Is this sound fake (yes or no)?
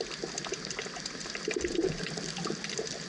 no